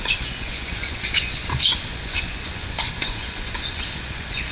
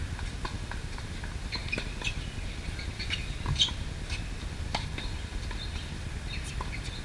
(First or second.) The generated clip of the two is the first